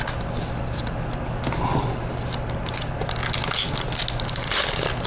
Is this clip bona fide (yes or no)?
yes